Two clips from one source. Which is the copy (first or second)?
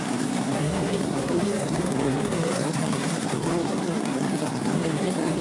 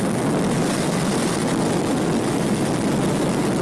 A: first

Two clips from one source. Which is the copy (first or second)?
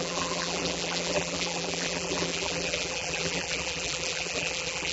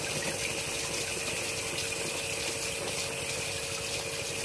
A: first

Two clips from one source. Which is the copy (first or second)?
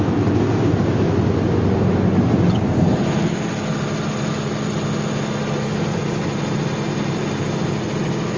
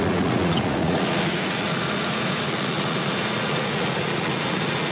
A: second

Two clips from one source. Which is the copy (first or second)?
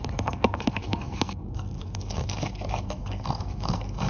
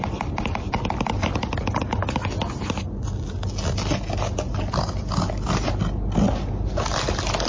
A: first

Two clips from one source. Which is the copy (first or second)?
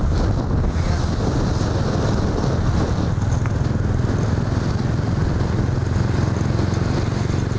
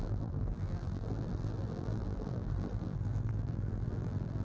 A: second